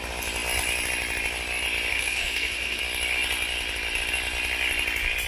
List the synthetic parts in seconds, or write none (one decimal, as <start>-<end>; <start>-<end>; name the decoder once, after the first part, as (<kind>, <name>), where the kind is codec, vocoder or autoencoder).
1.9-2.8 (codec, SNAC)